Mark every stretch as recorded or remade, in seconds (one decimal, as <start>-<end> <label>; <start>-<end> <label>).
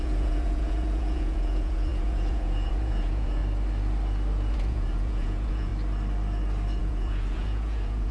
0.0-3.4 remade; 3.4-4.5 recorded; 4.5-5.7 remade; 5.7-6.8 recorded; 6.8-8.1 remade